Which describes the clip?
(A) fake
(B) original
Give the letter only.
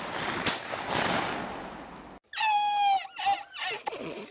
B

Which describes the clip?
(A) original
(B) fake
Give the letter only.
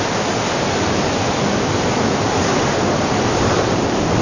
B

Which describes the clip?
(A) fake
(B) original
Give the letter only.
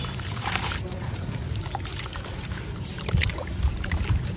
A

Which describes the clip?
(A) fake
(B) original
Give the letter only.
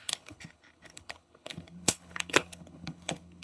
A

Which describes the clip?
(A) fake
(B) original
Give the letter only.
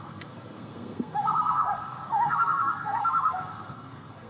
A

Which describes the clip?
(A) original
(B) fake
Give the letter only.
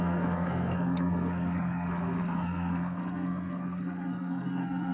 B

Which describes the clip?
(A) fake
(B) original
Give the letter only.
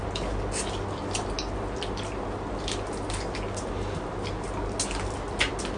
B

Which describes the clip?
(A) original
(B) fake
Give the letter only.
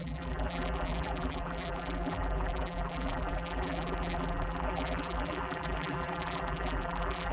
B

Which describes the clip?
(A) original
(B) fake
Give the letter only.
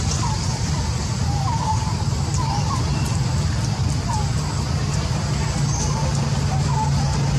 A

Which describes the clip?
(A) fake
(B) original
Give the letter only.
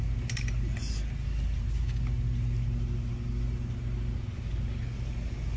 B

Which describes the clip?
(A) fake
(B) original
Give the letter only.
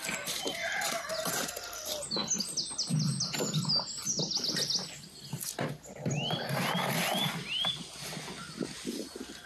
B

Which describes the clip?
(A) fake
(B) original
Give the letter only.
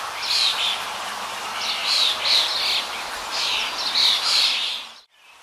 B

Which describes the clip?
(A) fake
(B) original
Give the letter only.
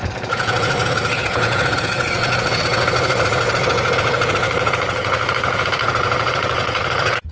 A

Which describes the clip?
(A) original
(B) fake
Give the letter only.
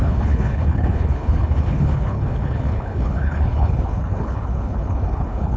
B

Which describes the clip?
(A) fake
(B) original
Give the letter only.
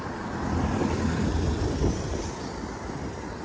B